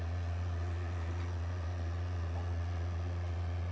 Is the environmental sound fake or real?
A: fake